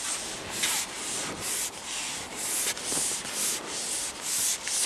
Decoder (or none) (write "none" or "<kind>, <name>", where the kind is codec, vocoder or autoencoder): none